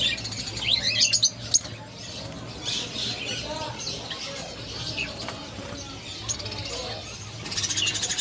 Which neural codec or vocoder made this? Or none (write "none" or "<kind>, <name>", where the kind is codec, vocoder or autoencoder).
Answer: none